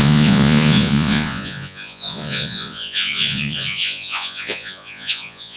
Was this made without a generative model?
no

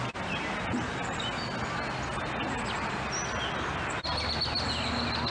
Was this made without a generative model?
yes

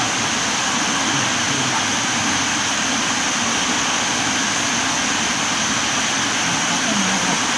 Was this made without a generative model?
yes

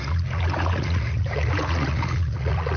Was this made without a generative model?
no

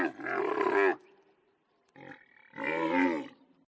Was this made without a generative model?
yes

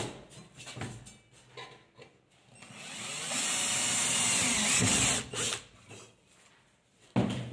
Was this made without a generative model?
yes